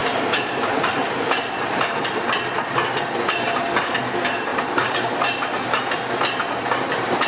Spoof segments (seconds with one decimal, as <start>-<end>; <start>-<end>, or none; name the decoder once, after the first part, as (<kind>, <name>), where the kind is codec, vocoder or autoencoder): 0.0-2.0 (vocoder, BigVGAN v2); 4.5-5.1